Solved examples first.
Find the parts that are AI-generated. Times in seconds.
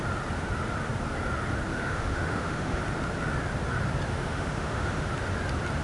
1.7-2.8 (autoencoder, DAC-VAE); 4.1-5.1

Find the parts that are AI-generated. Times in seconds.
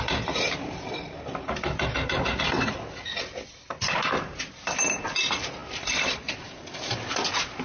none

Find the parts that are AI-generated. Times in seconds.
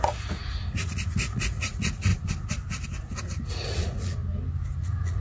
0.0-2.1 (vocoder, Vocos); 3.5-4.2; 4.8-5.2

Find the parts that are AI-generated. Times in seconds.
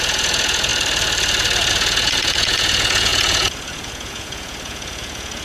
0.0-0.7 (vocoder, Vocos); 1.7-5.4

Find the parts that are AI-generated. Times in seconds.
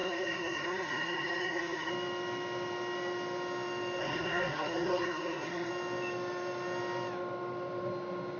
0.0-1.9 (codec, SNAC); 4.0-5.7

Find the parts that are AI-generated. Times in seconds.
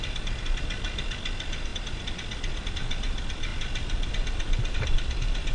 none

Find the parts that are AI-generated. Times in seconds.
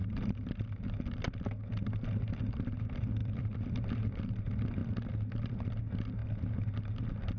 3.2-4.2 (vocoder, BigVGAN v2); 4.8-5.8